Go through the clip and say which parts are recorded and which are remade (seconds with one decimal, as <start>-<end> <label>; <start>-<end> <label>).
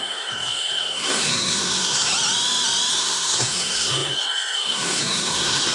0.0-2.1 remade; 2.1-2.9 recorded; 2.9-5.7 remade